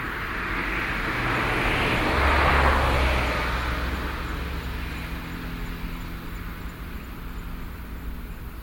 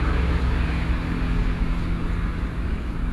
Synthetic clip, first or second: second